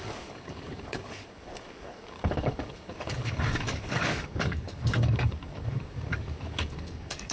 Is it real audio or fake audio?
fake